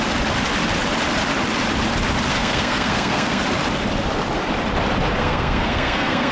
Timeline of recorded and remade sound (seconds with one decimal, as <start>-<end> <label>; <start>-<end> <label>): 0.0-2.3 recorded; 2.3-3.4 remade; 3.4-5.2 recorded; 5.2-6.3 remade